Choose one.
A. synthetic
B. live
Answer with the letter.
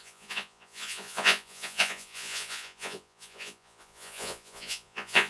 A